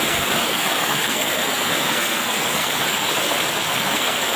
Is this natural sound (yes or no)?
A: no